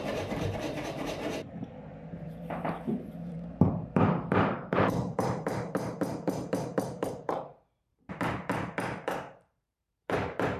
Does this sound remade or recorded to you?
remade